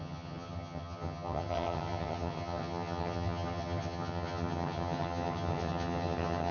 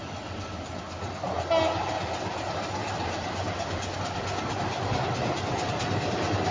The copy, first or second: first